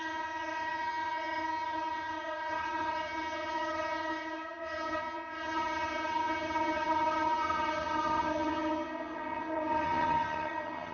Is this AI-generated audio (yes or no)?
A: yes